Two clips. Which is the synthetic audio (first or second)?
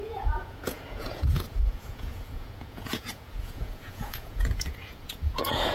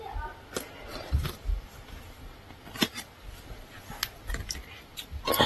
first